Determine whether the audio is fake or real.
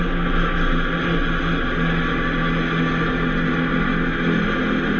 real